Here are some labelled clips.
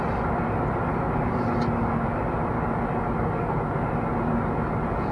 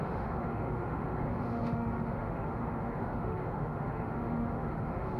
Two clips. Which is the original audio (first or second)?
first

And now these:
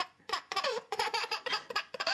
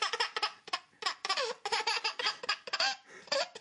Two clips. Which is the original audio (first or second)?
second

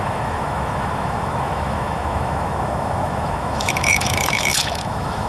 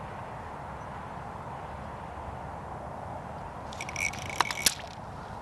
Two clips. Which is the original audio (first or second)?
second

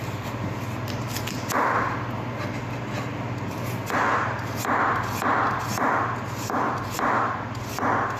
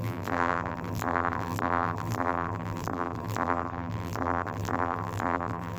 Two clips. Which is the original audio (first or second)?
first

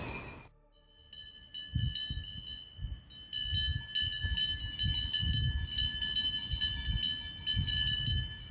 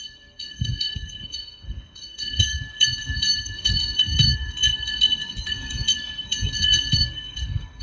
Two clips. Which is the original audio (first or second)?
first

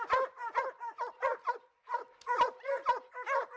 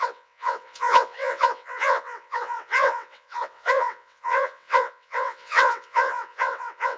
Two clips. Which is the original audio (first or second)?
first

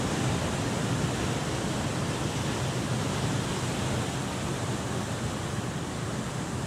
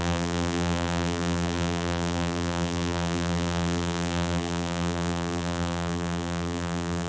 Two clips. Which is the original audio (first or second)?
first